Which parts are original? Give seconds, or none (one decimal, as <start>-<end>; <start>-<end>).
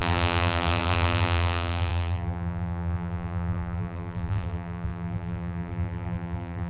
none